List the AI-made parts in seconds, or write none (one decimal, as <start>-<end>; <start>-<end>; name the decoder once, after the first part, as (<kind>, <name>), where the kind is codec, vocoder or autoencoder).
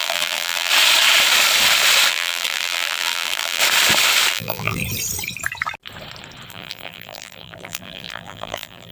0.0-0.7 (vocoder, BigVGAN v2); 2.1-3.6; 4.3-4.8; 6.5-8.9